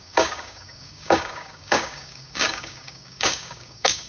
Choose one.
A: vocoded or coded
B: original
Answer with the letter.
A